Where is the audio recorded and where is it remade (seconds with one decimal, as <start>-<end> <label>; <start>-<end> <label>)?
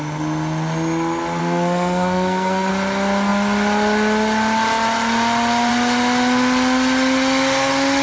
0.0-1.4 recorded; 1.4-2.7 remade; 2.7-8.0 recorded